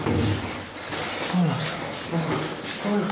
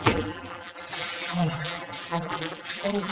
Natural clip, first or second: first